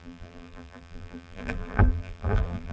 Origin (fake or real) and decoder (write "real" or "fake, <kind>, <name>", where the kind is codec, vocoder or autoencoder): fake, vocoder, BigVGAN v2